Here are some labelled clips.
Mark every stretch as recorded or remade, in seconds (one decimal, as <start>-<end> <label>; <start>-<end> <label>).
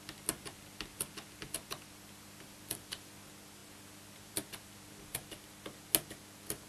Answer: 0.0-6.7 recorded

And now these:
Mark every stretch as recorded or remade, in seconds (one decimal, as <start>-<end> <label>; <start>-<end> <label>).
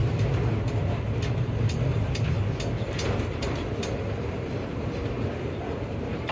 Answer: 0.0-3.8 recorded; 3.8-6.3 remade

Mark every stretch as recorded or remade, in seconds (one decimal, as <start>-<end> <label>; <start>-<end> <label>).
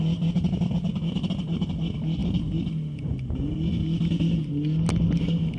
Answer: 0.0-5.6 recorded